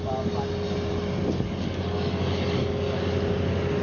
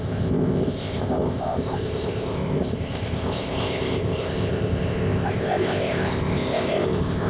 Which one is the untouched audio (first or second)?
first